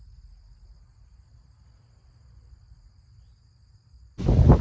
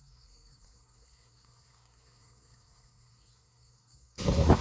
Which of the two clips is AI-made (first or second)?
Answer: second